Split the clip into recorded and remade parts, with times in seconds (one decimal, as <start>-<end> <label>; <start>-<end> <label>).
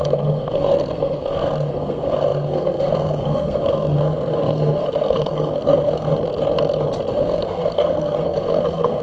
0.0-6.1 remade; 6.1-7.1 recorded; 7.1-9.0 remade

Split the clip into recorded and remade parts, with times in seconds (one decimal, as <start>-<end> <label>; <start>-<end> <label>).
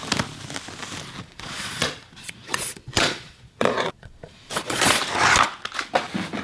0.0-1.2 recorded; 1.2-5.0 remade; 5.0-6.4 recorded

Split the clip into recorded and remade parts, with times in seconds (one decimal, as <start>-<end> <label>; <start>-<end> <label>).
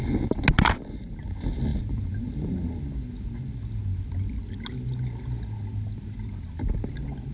0.0-7.3 recorded